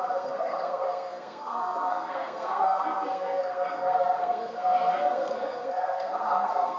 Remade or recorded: remade